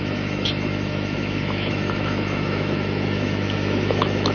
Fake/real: fake